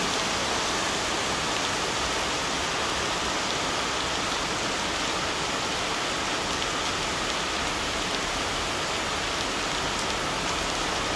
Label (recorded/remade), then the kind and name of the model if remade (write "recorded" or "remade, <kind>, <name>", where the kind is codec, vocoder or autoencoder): recorded